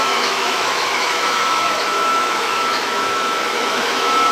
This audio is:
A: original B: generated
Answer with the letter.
B